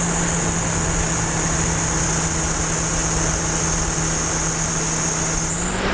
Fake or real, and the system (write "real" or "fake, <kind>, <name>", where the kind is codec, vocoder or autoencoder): real